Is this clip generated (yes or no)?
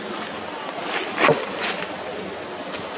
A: no